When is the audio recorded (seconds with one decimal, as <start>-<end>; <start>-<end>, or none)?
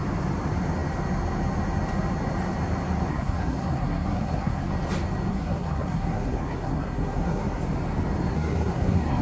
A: 0.0-3.1; 4.7-5.3; 7.6-8.3